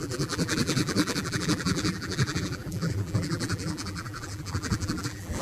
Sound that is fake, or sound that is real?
fake